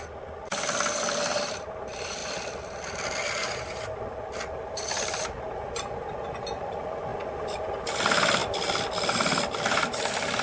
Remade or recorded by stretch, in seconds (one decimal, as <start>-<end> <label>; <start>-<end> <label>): 0.0-10.4 recorded